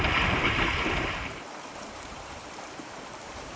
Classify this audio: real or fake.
fake